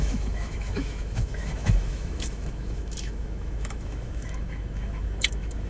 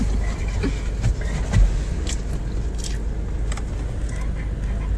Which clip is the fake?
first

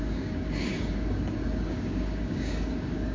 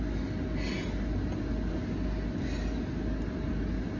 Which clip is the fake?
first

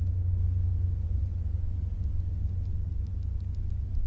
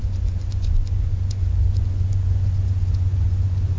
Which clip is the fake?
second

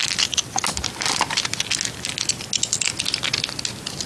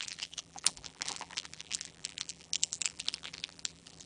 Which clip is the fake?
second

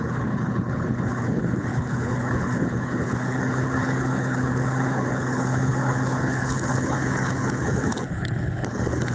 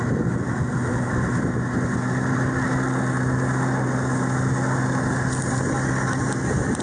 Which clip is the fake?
first